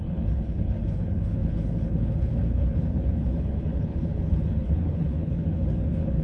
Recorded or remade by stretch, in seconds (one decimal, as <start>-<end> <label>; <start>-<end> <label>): 0.0-6.2 remade